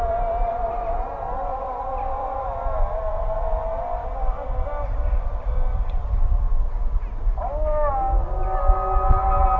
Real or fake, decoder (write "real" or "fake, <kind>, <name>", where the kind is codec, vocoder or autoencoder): real